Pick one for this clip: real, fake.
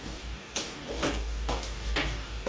fake